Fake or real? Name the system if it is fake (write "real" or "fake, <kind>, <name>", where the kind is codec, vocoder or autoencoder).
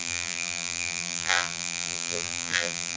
fake, vocoder, BigVGAN v2